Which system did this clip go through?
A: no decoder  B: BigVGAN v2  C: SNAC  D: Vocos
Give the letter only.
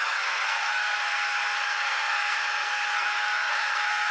C